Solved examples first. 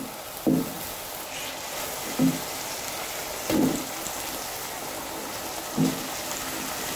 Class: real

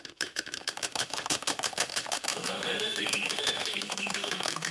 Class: fake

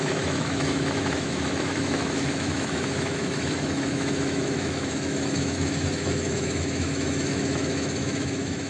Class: fake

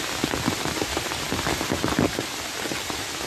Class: real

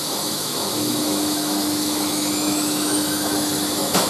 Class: fake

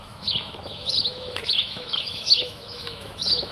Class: fake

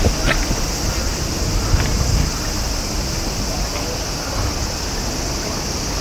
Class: real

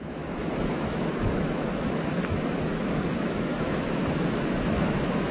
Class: fake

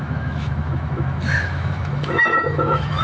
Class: fake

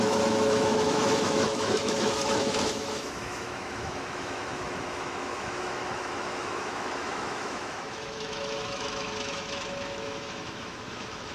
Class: fake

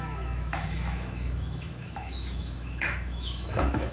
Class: fake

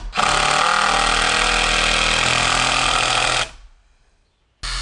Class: real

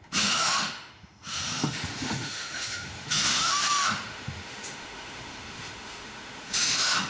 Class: fake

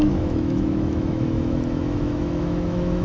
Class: fake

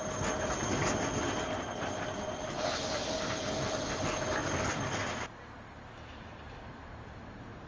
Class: real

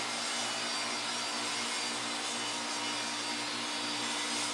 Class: real